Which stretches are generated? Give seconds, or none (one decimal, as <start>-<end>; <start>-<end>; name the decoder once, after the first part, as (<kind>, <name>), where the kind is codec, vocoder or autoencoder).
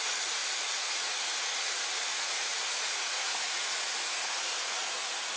0.0-5.4 (vocoder, Vocos)